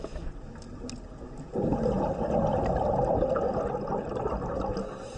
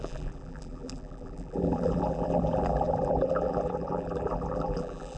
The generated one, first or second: second